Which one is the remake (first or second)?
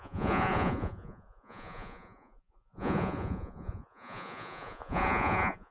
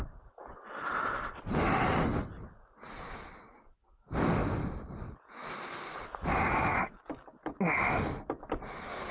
first